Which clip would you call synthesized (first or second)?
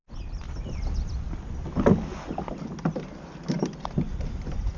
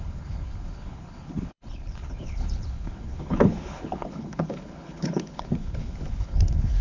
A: second